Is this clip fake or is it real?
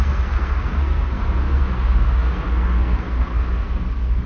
fake